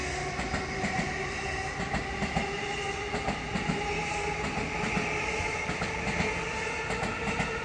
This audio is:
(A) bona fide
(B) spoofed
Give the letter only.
A